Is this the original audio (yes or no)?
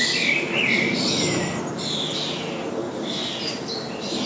yes